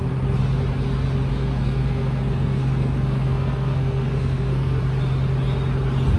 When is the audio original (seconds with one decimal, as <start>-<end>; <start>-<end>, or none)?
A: 0.0-1.3; 4.8-6.2